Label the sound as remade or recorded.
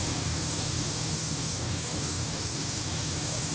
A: remade